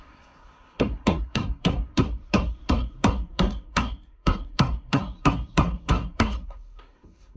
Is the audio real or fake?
fake